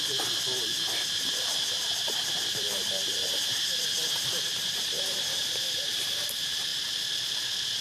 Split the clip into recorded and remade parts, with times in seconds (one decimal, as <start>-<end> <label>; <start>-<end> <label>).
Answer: 0.0-6.7 remade; 6.7-7.2 recorded; 7.2-7.8 remade

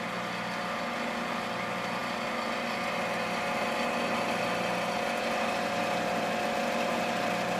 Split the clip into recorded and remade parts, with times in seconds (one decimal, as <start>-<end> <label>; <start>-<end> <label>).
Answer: 0.0-7.6 recorded